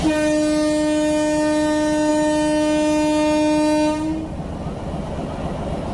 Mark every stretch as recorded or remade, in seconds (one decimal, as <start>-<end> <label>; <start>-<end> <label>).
0.0-5.9 recorded